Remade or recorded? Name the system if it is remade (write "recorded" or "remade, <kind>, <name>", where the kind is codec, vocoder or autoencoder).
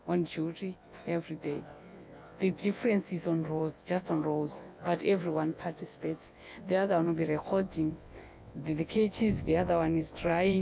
remade, vocoder, WaveNeXt